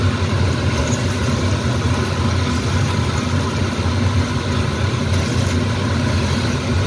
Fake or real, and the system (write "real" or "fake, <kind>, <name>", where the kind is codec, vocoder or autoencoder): real